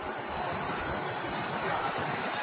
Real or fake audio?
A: real